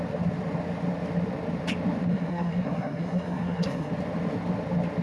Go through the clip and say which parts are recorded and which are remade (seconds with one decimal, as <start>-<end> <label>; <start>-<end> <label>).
0.0-2.1 recorded; 2.1-3.9 remade; 3.9-5.0 recorded

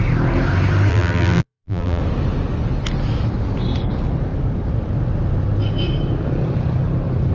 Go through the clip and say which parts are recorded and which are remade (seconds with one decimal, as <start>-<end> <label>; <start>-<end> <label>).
0.0-0.9 recorded; 0.9-2.0 remade; 2.0-7.3 recorded

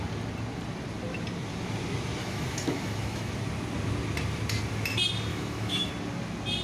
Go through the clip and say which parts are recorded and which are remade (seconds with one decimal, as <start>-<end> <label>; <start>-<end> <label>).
0.0-2.2 recorded; 2.2-3.3 remade; 3.3-5.3 recorded; 5.3-5.9 remade; 5.9-6.6 recorded